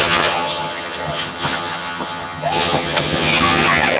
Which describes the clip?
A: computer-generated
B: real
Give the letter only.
A